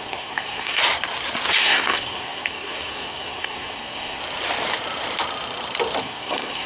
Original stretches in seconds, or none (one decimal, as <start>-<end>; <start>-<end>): 0.8-1.6; 4.2-6.0